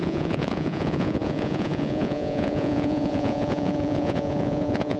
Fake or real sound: fake